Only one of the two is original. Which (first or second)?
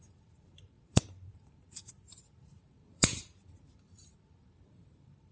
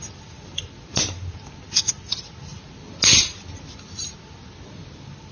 second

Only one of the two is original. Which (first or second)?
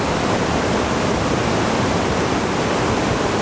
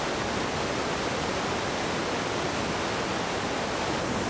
second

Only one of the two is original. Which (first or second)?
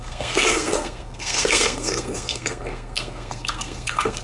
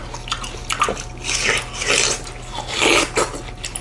second